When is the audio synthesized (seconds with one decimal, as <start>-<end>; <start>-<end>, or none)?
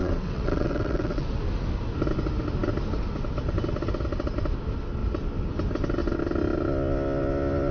0.0-1.4